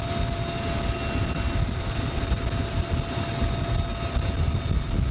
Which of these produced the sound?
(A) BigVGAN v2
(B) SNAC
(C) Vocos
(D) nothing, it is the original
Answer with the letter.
D